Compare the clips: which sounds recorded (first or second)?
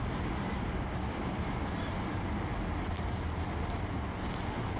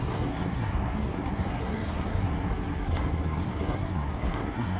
first